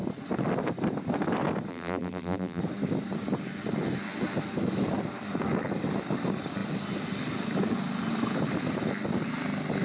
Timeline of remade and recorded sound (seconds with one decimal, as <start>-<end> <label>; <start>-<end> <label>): 0.0-1.7 recorded; 1.7-2.6 remade; 2.6-9.8 recorded